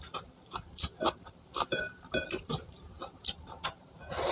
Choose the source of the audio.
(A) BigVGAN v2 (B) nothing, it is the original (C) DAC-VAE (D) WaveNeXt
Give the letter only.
A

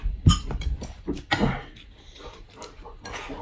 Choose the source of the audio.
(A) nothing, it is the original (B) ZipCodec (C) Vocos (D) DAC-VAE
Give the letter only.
A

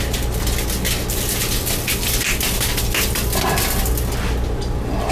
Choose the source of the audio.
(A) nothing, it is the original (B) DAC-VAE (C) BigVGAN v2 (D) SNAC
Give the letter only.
A